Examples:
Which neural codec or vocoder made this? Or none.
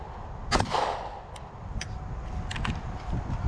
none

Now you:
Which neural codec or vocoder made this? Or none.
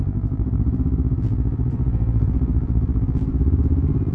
vocoder, BigVGAN v2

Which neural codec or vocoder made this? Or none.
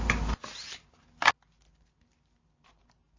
none